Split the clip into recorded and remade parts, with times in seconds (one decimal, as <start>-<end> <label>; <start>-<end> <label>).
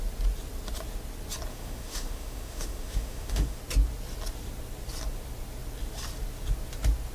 0.0-1.5 recorded; 1.5-3.6 remade; 3.6-7.1 recorded